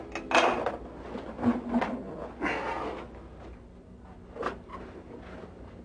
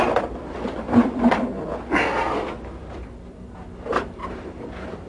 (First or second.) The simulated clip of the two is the second